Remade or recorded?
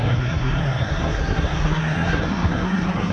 remade